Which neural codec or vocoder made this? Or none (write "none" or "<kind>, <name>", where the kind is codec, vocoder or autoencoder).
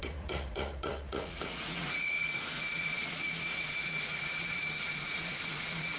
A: vocoder, Vocos